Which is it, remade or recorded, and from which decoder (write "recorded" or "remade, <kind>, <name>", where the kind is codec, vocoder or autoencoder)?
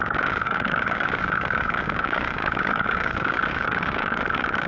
remade, codec, DAC